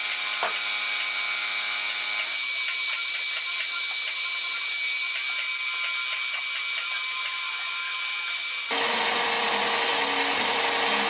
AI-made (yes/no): no